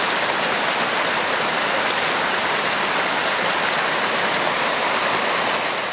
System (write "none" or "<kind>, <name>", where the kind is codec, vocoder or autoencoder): none